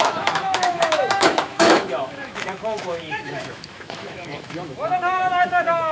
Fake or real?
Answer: fake